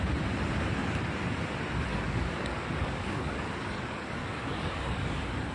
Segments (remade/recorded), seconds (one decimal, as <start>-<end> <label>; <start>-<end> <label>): 0.0-1.9 recorded; 1.9-5.5 remade

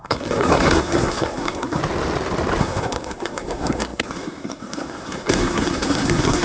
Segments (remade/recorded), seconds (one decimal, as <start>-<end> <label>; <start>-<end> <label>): 0.0-1.8 remade; 1.8-2.6 recorded; 2.6-6.4 remade

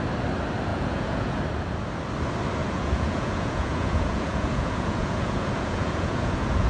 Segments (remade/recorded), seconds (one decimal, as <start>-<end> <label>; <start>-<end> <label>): 0.0-0.7 recorded; 0.7-1.4 remade; 1.4-2.6 recorded; 2.6-6.7 remade

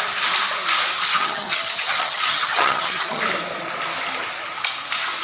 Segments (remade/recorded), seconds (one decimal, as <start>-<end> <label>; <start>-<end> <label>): 0.0-1.1 recorded; 1.1-3.2 remade; 3.2-5.2 recorded

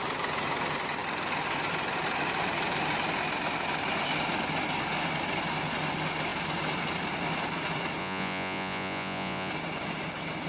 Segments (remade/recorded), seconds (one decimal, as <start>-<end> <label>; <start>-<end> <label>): 0.0-8.0 recorded; 8.0-9.5 remade; 9.5-10.5 recorded

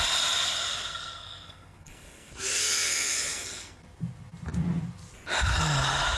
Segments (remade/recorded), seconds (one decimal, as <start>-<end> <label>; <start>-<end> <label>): 0.0-0.7 recorded; 0.7-3.8 remade; 3.8-6.2 recorded

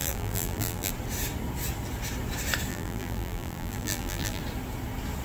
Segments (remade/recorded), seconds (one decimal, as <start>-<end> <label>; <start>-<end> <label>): 0.0-0.9 remade; 0.9-2.7 recorded; 2.7-4.4 remade; 4.4-5.2 recorded